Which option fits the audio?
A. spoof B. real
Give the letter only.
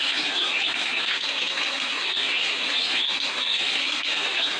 A